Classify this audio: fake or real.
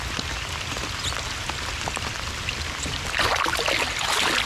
real